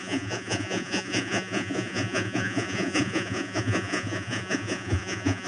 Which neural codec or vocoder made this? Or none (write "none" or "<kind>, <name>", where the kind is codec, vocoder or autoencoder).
vocoder, Vocos